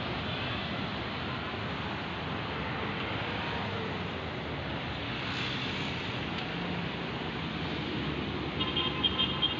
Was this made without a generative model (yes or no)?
yes